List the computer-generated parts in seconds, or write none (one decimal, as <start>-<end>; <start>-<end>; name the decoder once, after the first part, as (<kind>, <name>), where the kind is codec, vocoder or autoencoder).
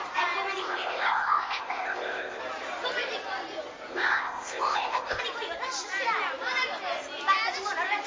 0.6-2.4 (codec, ZipCodec); 3.9-5.2